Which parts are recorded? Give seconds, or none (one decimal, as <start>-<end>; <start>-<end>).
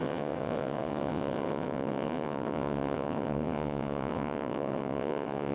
none